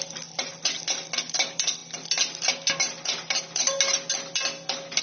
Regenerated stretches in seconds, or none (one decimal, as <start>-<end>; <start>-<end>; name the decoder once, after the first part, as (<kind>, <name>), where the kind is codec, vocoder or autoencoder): none